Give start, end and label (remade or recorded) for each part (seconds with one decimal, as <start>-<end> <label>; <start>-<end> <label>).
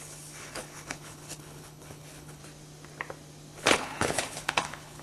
0.0-2.4 remade; 2.4-3.6 recorded; 3.6-5.0 remade